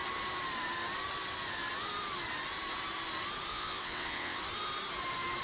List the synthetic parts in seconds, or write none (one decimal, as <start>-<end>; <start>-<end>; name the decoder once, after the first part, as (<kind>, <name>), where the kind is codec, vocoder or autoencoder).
3.5-4.4 (vocoder, WaveNeXt)